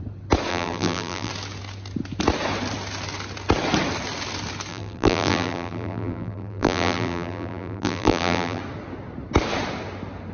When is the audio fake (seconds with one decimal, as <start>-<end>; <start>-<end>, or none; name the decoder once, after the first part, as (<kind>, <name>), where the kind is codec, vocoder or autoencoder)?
0.5-1.3 (vocoder, BigVGAN v2); 4.7-8.6